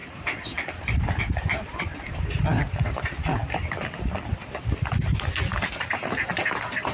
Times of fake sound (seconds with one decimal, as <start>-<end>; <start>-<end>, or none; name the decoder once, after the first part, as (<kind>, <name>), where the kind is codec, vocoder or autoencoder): 0.0-3.4 (vocoder, BigVGAN v2); 6.3-6.9